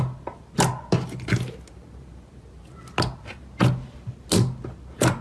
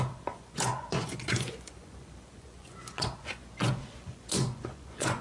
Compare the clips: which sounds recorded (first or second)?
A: first